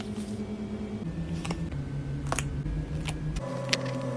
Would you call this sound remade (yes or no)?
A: no